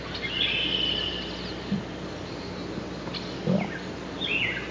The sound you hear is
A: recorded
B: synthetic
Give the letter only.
A